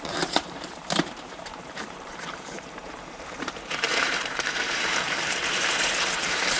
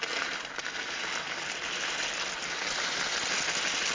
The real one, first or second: second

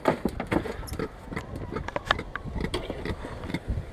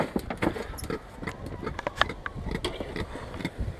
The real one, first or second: second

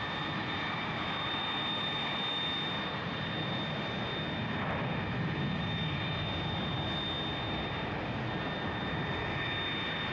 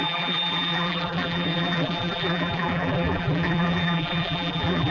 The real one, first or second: first